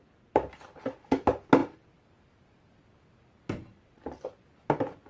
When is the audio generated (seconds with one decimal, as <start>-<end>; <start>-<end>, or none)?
none